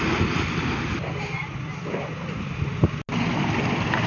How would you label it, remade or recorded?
recorded